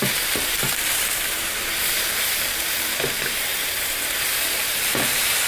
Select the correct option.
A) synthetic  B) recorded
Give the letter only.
A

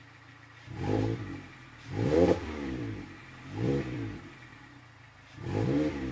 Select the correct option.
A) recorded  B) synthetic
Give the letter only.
B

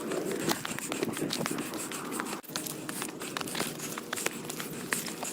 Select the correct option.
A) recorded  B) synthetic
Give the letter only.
A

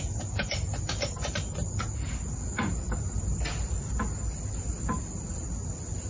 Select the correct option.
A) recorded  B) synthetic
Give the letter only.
A